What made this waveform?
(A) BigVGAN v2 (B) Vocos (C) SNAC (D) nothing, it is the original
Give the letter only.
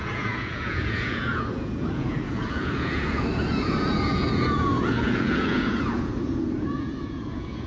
B